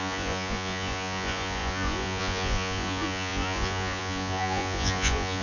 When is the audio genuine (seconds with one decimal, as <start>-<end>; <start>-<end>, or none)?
none